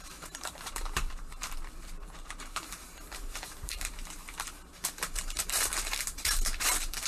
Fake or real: fake